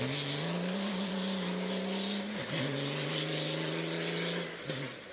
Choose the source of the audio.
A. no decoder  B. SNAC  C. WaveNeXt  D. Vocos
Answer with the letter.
A